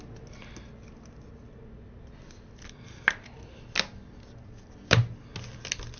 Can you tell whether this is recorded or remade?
recorded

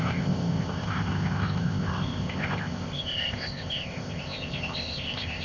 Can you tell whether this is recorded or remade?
remade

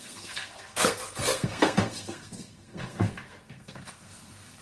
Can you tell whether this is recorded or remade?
remade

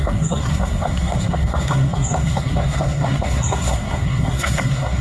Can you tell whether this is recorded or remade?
remade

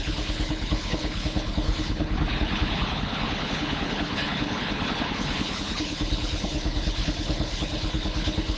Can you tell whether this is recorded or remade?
remade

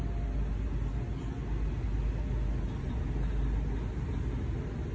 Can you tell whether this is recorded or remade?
recorded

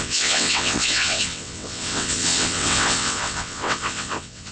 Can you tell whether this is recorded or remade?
remade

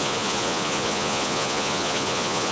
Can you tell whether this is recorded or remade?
remade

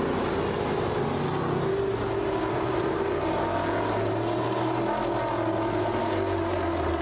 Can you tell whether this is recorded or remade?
recorded